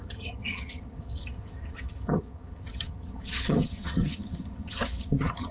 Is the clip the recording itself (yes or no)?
no